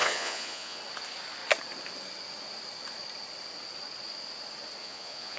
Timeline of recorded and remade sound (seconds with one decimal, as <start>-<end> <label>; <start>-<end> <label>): 0.0-0.8 remade; 0.8-4.8 recorded; 4.8-5.4 remade